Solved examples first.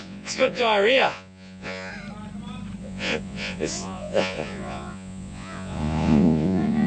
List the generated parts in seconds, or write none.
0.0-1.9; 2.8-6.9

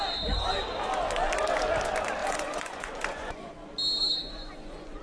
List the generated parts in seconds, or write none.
2.2-3.5; 4.2-5.0

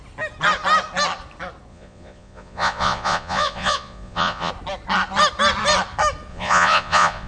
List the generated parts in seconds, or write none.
1.7-4.5; 6.3-7.3

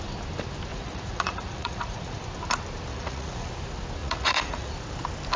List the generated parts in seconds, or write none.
0.7-2.2; 2.9-3.5; 4.0-4.7

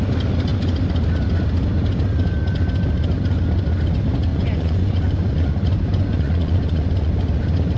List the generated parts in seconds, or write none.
4.3-7.1

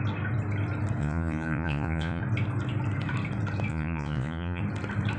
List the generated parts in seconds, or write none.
1.0-2.2; 3.7-4.6

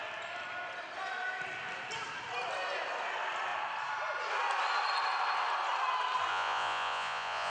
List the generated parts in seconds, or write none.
6.3-7.5